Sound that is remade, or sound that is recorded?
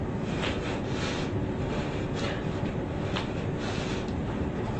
remade